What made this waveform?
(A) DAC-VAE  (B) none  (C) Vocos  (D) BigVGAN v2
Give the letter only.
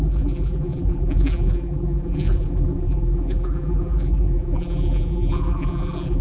D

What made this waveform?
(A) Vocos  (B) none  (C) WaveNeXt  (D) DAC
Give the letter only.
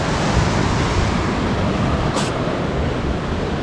B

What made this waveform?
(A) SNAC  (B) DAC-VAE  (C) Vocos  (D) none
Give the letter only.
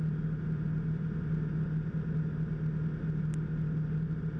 D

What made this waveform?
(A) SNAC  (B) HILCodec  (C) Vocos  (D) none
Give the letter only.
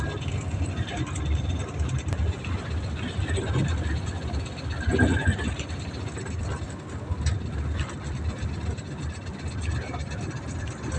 D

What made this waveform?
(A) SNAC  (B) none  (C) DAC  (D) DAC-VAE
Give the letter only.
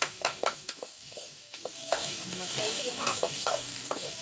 C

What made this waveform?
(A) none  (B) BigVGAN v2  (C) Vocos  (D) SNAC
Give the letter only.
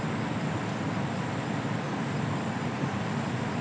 A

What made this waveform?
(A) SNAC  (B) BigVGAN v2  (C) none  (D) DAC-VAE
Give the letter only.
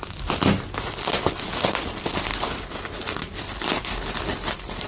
C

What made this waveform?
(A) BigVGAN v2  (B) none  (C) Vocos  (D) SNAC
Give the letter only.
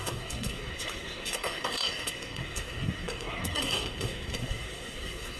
D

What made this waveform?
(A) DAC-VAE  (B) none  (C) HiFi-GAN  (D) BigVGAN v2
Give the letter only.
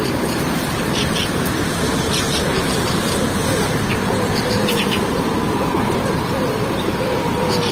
D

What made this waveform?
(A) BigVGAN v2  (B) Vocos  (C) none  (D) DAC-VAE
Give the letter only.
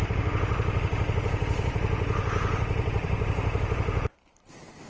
A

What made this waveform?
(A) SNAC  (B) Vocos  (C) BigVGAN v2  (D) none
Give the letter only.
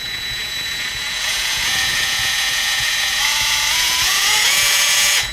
B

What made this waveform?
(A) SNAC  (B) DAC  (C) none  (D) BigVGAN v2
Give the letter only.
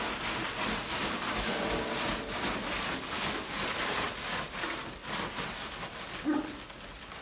C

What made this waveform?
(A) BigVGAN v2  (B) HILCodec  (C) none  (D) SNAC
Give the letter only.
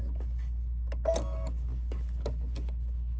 C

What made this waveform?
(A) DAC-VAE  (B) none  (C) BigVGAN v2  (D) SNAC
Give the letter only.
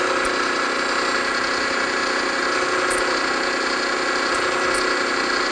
B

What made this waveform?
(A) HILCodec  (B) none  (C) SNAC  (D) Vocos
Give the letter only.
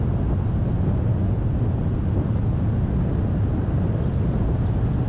B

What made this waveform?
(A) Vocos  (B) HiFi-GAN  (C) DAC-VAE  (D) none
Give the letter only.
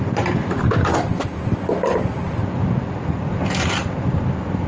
D